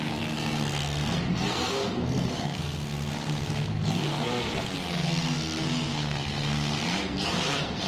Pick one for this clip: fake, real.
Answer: fake